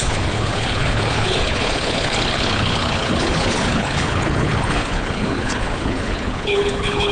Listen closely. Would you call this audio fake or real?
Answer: fake